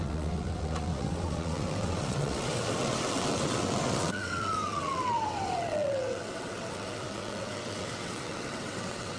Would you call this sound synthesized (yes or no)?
yes